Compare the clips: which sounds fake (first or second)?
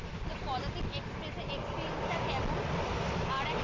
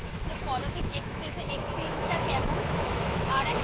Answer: second